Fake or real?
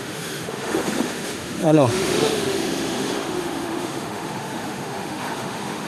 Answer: fake